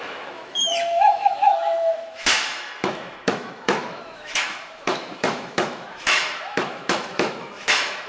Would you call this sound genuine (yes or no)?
no